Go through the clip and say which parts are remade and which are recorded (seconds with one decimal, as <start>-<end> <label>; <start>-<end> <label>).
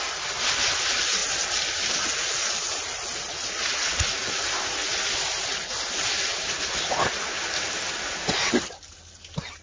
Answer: 0.0-9.6 recorded